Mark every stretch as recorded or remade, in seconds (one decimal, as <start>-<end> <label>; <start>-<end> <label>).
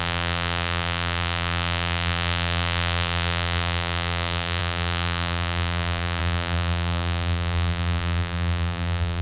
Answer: 0.0-9.2 remade